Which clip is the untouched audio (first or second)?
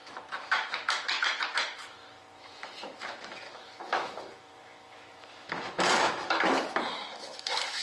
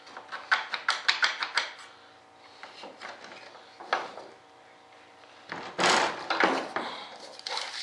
second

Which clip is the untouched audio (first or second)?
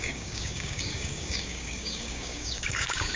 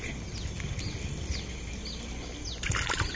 second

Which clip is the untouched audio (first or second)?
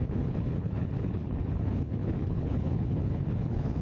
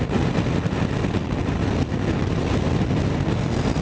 second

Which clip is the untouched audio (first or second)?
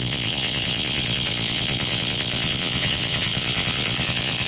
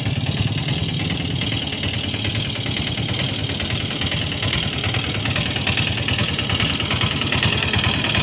second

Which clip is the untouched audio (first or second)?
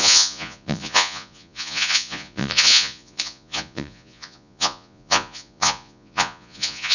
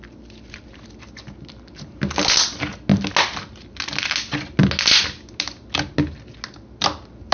second